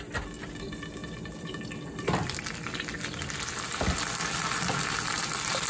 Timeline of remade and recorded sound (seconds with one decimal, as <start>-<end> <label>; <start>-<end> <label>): 0.0-5.7 recorded